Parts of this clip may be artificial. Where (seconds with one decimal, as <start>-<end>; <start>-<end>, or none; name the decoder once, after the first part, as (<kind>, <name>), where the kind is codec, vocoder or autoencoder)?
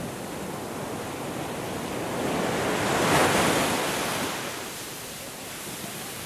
none